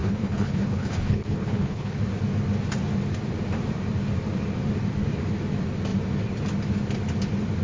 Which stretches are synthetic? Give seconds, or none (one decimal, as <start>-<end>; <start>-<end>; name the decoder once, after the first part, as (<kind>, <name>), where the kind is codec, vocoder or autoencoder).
0.0-2.0 (codec, HILCodec)